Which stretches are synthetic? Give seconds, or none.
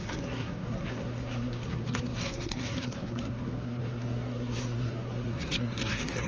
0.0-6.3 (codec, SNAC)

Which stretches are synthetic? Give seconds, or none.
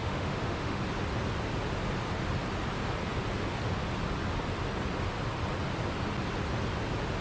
0.0-0.8 (autoencoder, DAC-VAE)